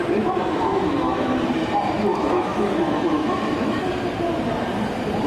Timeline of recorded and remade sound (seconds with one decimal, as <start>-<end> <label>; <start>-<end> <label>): 0.0-0.7 recorded; 0.7-1.3 remade; 1.3-2.1 recorded; 2.1-3.9 remade; 3.9-5.3 recorded